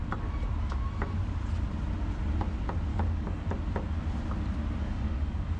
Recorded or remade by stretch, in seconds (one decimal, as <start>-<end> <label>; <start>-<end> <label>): 0.0-2.9 recorded; 2.9-3.5 remade; 3.5-4.8 recorded; 4.8-5.6 remade